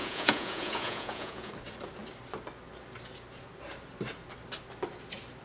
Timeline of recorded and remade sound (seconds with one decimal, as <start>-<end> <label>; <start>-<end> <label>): 0.0-1.5 remade; 1.5-5.4 recorded